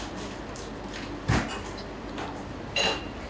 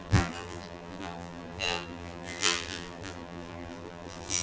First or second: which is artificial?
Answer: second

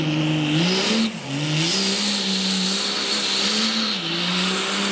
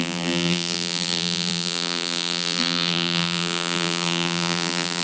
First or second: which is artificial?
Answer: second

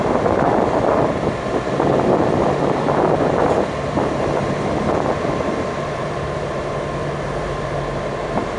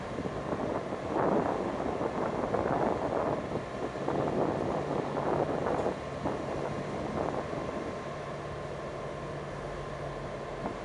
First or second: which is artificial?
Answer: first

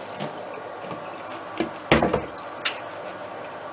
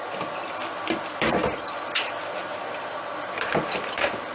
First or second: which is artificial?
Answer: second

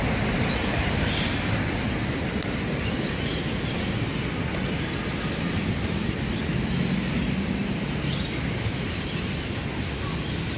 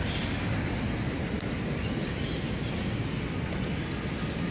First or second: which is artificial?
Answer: first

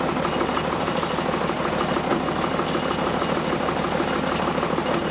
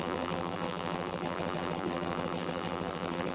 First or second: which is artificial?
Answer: second